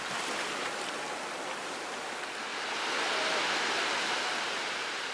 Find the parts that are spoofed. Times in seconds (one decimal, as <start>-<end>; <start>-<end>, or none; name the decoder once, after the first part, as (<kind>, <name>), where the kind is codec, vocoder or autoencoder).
none